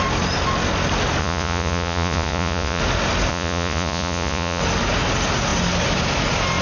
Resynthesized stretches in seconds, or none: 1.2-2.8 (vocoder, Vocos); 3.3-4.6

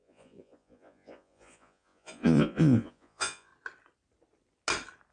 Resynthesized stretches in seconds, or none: 0.0-3.5 (vocoder, Vocos)

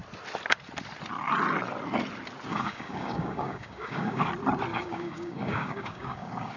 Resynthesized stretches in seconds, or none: 2.5-4.3 (codec, DAC); 4.7-6.6

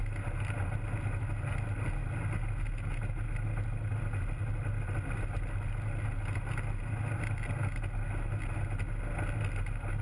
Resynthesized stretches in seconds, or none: none